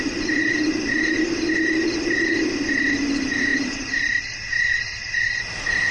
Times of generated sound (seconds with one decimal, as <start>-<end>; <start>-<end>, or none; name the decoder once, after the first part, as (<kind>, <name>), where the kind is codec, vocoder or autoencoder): none